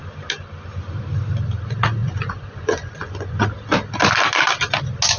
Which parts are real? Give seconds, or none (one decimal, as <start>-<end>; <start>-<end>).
0.0-2.0; 3.5-5.2